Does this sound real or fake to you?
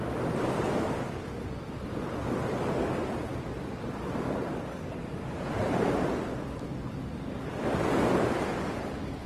real